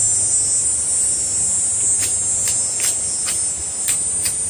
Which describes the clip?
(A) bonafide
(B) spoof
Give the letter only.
A